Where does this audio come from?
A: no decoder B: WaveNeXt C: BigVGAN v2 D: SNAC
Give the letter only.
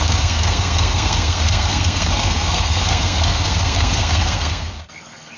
D